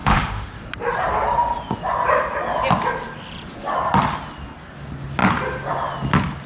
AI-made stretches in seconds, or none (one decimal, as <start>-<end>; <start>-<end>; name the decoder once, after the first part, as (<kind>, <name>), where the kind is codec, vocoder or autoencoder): 0.0-0.6 (autoencoder, DAC-VAE)